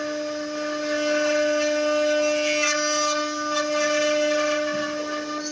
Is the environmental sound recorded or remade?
recorded